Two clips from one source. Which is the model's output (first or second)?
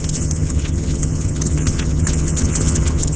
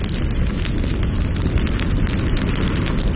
first